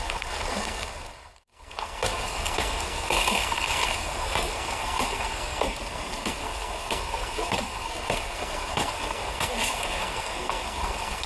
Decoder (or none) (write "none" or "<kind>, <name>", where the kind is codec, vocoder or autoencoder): codec, SNAC